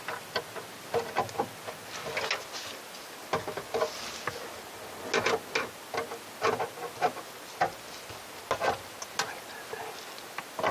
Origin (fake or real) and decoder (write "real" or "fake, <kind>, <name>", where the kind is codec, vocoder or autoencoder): real